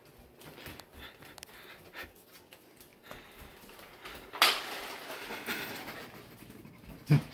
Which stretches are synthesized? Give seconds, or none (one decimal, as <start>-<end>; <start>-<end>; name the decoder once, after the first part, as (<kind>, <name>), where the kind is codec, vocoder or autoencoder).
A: none